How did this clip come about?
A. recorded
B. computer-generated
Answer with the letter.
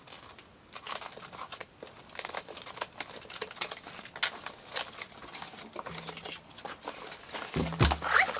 A